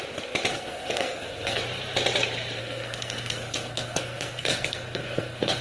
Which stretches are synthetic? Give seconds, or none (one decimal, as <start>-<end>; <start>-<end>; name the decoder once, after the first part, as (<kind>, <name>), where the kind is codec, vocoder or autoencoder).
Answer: 0.5-1.6 (codec, SNAC); 2.6-5.6